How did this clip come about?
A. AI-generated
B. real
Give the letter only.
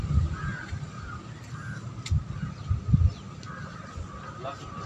B